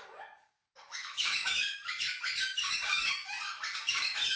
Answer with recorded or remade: remade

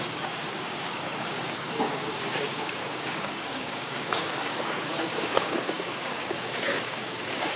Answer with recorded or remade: remade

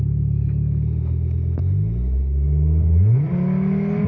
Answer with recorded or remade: recorded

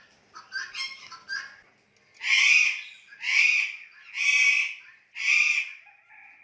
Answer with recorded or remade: recorded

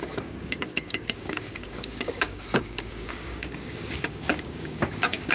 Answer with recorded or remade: remade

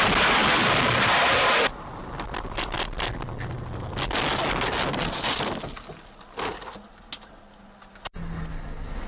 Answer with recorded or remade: recorded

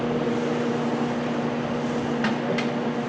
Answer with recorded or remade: recorded